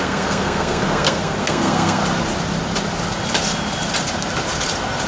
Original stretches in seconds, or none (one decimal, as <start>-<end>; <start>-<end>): 2.0-5.1